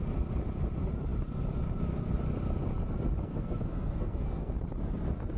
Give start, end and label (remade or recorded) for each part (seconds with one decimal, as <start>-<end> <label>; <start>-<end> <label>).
0.0-3.2 recorded; 3.2-4.5 remade; 4.5-5.4 recorded